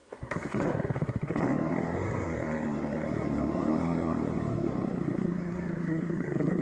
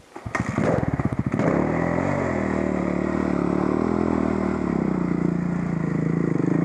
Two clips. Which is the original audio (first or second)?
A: second